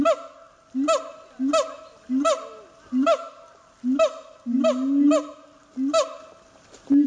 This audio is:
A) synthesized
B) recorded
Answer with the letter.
B